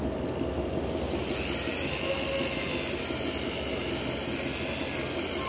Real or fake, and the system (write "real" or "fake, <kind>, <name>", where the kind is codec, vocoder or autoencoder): real